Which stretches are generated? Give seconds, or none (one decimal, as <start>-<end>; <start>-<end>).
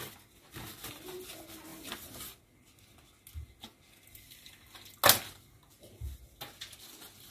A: none